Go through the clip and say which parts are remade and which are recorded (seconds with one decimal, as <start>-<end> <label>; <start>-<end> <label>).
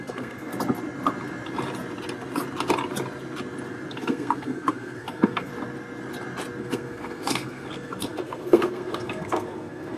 0.0-0.5 remade; 0.5-3.9 recorded; 3.9-5.5 remade; 5.5-6.6 recorded; 6.6-10.0 remade